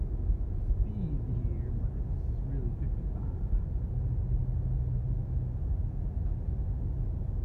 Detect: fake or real real